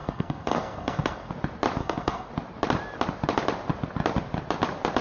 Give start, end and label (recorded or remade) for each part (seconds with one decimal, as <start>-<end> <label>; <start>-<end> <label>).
0.0-1.3 remade; 1.3-1.8 recorded; 1.8-2.3 remade; 2.3-5.0 recorded

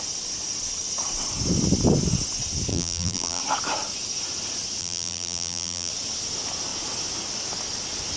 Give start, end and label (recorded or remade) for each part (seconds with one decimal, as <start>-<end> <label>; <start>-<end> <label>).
0.0-2.7 recorded; 2.7-3.4 remade; 3.4-4.8 recorded; 4.8-5.9 remade; 5.9-8.2 recorded

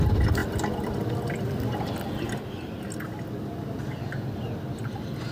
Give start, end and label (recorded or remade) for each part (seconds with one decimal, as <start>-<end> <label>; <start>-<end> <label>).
0.0-5.3 recorded

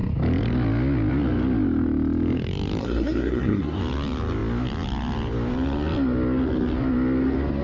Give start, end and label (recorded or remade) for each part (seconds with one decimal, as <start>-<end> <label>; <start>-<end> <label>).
0.0-2.8 recorded; 2.8-3.8 remade; 3.8-7.6 recorded

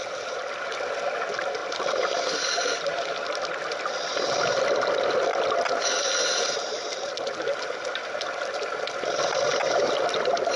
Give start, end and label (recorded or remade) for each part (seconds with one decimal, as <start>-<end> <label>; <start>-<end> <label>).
0.0-10.6 recorded

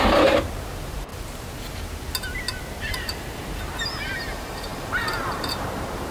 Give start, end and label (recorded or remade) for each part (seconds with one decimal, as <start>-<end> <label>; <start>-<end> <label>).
0.0-1.1 remade; 1.1-2.9 recorded; 2.9-6.1 remade

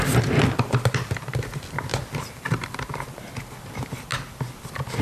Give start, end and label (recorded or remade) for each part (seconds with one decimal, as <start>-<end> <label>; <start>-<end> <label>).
0.0-1.9 recorded; 1.9-3.2 remade; 3.2-5.0 recorded

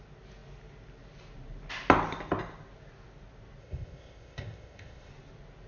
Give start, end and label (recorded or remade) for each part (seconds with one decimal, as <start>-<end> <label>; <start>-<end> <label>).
0.0-3.6 recorded; 3.6-5.1 remade; 5.1-5.7 recorded